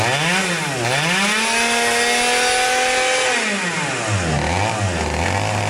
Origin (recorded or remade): recorded